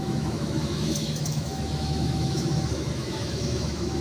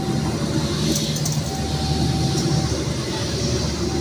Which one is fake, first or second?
first